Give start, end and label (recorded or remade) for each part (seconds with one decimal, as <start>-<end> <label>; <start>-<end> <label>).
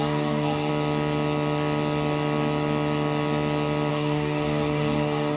0.0-0.7 remade; 0.7-3.9 recorded; 3.9-5.4 remade